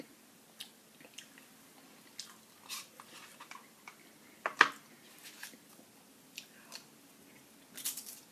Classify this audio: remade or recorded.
recorded